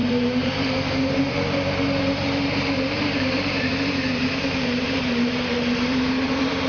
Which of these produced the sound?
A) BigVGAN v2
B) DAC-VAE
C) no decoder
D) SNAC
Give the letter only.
A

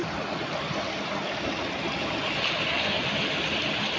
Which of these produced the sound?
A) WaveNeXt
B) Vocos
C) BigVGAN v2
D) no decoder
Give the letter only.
D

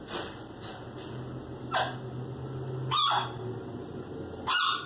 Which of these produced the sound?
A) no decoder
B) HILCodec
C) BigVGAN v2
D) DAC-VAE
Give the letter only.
A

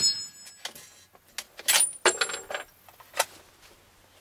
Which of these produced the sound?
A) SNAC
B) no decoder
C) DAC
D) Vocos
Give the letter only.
B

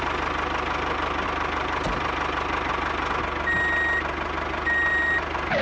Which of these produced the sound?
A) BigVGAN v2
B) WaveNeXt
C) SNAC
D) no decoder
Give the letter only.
D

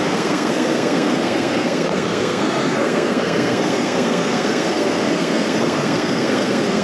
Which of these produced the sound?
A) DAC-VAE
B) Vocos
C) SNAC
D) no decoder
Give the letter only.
C